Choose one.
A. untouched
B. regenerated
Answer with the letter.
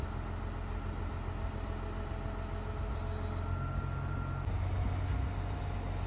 A